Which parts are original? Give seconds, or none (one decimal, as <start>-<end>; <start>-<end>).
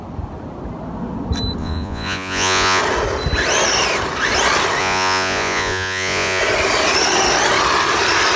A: 0.0-1.6; 2.8-4.8; 6.4-8.4